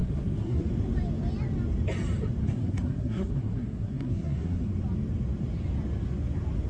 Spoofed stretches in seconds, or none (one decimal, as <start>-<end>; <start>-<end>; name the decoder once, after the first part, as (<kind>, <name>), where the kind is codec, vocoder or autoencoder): 0.0-0.7 (codec, SNAC); 2.4-4.7